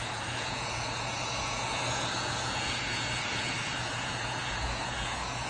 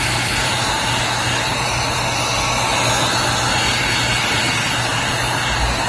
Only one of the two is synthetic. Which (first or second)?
first